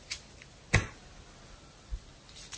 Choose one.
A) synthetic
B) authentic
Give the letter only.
B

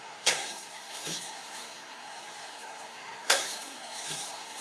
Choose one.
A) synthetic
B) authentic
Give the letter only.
A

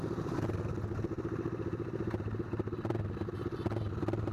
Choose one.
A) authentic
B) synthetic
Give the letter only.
A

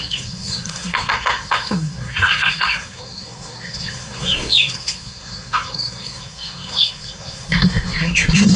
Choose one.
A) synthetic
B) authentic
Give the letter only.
A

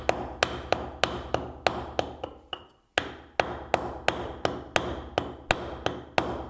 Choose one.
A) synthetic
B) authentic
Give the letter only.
B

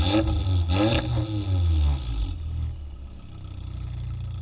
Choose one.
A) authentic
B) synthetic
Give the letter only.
A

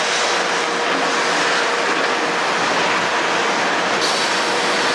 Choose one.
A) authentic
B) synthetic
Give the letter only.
A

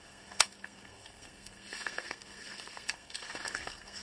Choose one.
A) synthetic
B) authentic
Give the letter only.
A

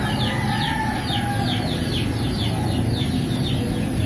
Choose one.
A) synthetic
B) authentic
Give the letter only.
B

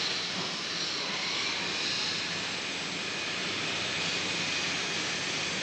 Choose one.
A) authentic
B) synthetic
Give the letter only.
A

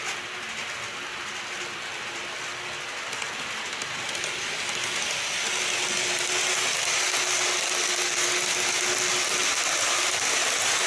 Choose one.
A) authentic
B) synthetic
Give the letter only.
A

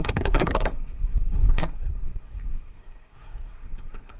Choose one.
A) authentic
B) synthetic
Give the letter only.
B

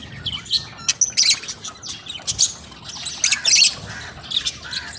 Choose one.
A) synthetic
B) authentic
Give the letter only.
B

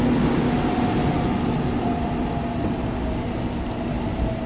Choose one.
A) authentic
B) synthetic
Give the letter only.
A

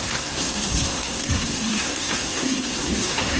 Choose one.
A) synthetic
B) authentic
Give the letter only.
A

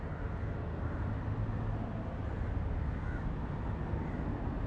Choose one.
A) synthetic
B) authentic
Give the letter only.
B